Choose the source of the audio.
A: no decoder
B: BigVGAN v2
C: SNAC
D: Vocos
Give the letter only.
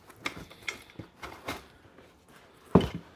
A